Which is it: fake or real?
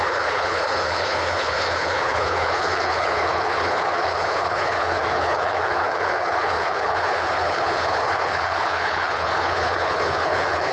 fake